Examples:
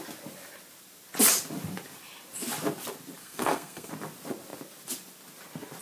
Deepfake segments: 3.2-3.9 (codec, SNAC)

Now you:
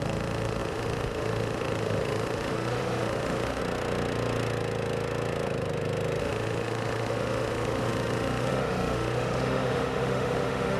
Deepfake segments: 0.0-3.6 (autoencoder, DAC-VAE); 6.2-10.8

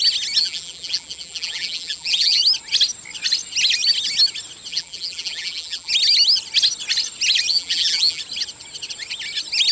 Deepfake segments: 0.4-2.4 (vocoder, BigVGAN v2); 4.7-5.9; 7.5-8.2

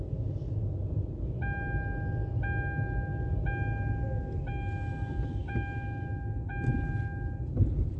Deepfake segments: none